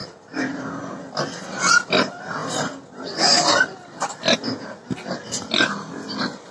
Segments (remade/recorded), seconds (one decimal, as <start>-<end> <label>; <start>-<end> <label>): 0.0-6.5 recorded